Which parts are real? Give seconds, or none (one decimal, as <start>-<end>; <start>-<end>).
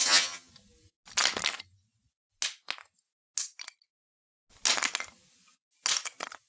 0.5-6.5